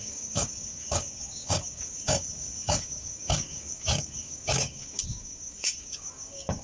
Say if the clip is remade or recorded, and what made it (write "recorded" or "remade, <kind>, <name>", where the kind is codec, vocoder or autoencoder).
remade, codec, DAC